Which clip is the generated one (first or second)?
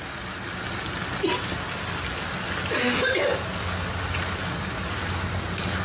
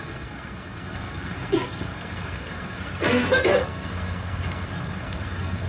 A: second